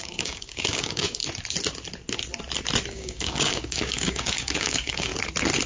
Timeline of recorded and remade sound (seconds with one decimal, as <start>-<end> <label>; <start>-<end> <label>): 0.0-1.2 remade; 1.2-2.9 recorded; 2.9-5.1 remade; 5.1-5.7 recorded